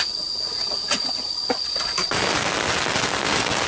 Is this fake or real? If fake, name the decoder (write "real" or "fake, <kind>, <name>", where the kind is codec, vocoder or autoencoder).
real